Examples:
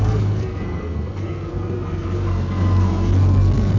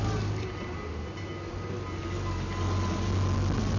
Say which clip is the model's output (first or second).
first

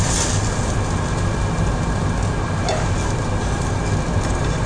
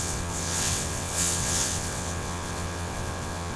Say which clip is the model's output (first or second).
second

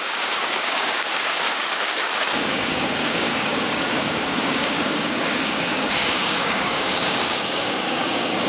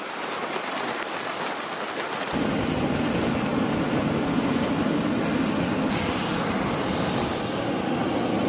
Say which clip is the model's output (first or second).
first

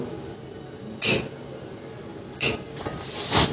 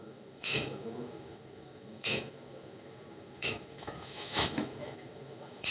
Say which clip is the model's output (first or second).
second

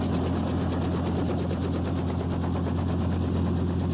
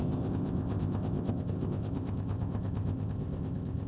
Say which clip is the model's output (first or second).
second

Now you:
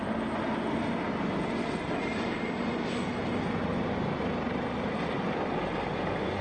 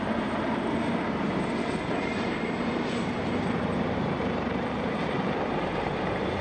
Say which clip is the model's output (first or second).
second